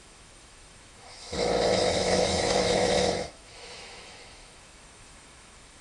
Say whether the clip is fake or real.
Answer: fake